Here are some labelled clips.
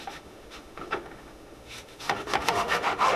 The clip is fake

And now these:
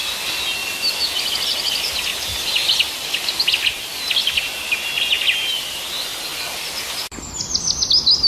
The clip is real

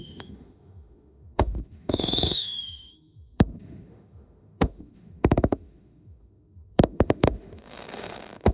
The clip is fake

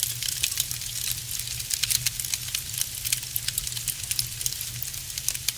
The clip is real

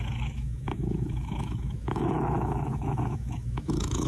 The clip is fake